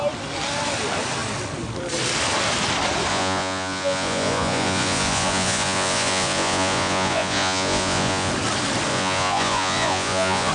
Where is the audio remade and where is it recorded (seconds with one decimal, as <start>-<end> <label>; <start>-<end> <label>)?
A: 0.0-3.1 recorded; 3.1-8.3 remade; 8.3-8.9 recorded; 8.9-10.5 remade